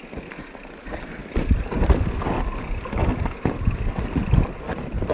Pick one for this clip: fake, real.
real